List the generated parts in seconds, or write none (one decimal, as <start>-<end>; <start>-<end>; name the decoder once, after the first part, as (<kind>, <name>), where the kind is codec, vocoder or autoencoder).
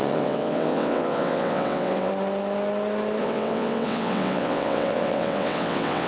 0.0-2.1 (vocoder, WaveNeXt); 3.2-6.1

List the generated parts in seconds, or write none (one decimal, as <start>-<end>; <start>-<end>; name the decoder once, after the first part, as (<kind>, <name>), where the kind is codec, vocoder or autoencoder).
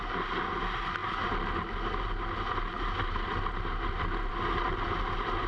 none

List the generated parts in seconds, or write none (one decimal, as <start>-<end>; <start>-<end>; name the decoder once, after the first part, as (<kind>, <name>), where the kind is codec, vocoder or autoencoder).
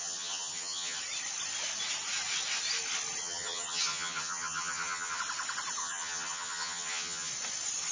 0.0-1.0 (vocoder, HiFi-GAN); 3.2-5.2; 5.8-7.3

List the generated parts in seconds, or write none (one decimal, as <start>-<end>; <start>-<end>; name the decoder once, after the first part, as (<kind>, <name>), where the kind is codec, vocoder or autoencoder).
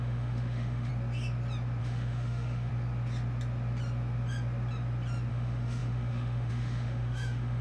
0.0-0.9 (autoencoder, DAC-VAE); 1.8-2.7; 5.3-7.6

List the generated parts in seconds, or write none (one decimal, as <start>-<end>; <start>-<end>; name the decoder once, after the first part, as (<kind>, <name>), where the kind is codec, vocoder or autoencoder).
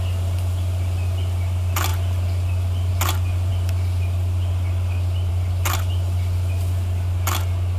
none